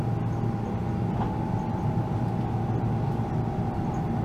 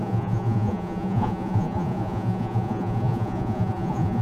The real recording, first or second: first